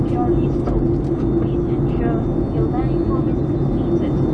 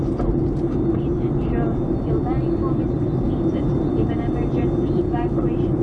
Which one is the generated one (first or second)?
second